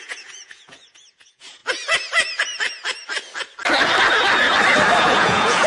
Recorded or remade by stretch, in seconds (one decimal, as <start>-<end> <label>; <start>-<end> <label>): 0.0-1.6 remade; 1.6-5.0 recorded; 5.0-5.7 remade